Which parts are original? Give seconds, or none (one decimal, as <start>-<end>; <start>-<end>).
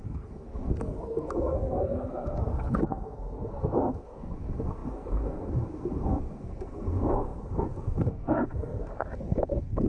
none